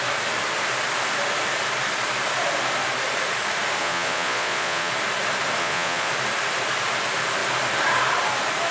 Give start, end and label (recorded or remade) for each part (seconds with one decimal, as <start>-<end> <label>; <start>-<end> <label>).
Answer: 0.0-3.8 recorded; 3.8-4.9 remade; 4.9-5.6 recorded; 5.6-6.1 remade; 6.1-8.7 recorded